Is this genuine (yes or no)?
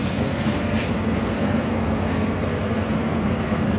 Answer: no